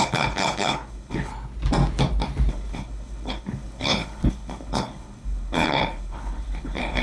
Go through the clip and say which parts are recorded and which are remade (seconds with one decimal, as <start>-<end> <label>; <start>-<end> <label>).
0.0-1.3 remade; 1.3-2.5 recorded; 2.5-7.0 remade